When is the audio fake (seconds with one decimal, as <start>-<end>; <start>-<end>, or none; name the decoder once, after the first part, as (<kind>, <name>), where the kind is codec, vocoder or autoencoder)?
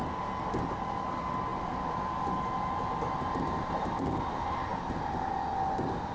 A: none